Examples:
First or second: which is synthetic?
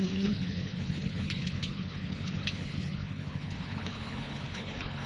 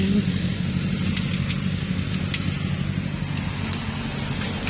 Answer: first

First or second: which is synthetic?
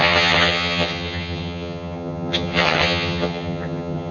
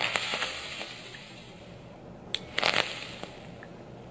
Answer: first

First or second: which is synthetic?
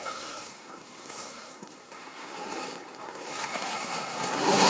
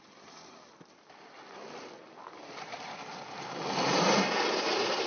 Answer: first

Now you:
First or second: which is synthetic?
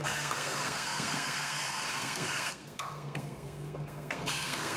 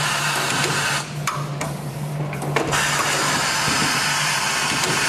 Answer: first